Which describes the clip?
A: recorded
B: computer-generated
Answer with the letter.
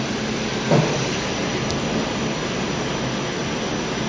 A